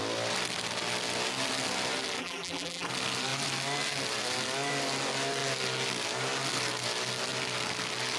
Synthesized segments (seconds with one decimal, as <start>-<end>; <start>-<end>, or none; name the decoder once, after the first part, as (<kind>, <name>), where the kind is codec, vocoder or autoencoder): 2.2-2.9 (vocoder, BigVGAN v2)